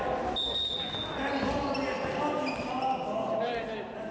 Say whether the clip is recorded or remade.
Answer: recorded